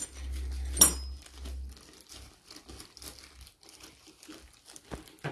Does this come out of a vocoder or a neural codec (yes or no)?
no